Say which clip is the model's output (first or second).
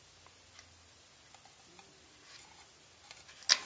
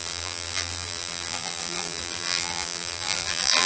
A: second